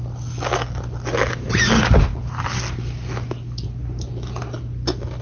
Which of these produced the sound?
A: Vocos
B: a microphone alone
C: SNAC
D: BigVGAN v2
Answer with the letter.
B